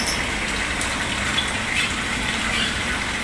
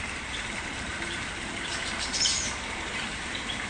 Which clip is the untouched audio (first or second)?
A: first